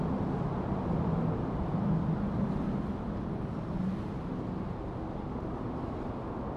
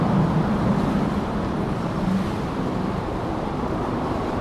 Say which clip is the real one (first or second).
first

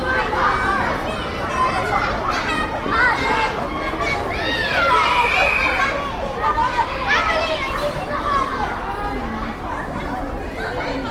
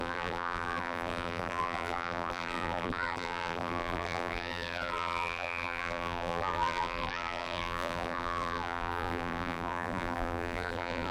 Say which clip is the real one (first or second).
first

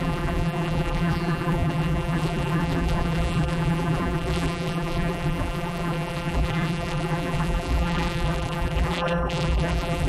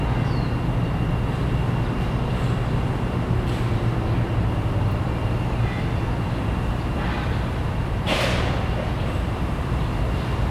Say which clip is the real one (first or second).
second